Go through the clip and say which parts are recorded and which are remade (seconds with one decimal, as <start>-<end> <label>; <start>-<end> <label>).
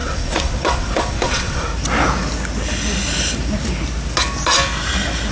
0.0-1.7 remade; 1.7-5.3 recorded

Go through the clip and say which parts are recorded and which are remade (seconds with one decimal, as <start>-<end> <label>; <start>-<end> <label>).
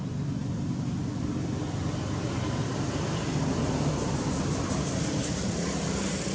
0.0-0.4 recorded; 0.4-3.9 remade; 3.9-6.3 recorded